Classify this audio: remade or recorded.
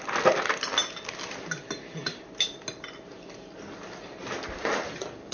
recorded